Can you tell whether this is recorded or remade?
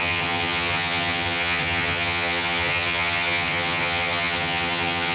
remade